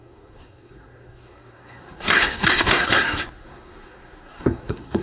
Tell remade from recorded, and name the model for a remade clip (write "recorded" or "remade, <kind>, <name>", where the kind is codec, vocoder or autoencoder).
remade, codec, SNAC